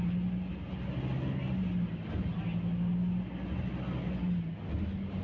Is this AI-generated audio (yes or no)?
no